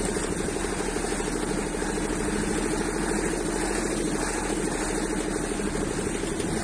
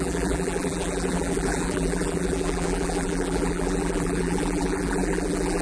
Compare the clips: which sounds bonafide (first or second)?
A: first